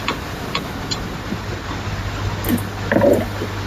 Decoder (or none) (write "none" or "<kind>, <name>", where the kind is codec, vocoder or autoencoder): none